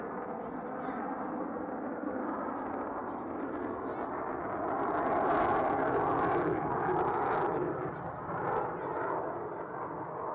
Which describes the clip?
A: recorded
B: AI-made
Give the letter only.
A